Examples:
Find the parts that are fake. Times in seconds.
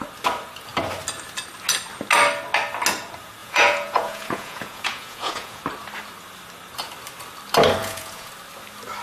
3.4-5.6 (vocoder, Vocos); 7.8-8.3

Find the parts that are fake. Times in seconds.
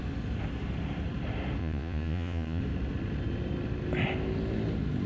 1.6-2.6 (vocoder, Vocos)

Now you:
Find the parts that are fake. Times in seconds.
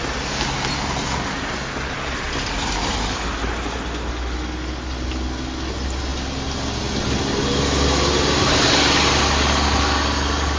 none